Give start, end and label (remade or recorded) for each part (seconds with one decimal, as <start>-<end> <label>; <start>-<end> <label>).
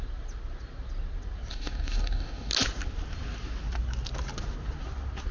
0.0-1.5 recorded; 1.5-2.5 remade; 2.5-5.3 recorded